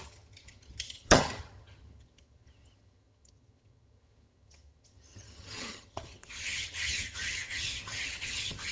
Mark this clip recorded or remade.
remade